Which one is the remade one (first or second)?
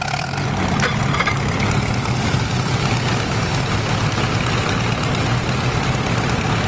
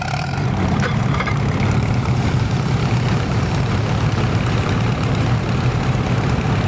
second